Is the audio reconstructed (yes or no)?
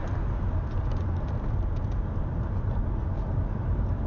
no